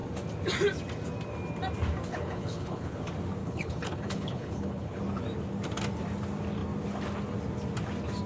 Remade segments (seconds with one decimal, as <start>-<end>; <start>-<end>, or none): 2.1-3.0; 3.4-5.0